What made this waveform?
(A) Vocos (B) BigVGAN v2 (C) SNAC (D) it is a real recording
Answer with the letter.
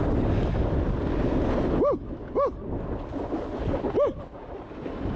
D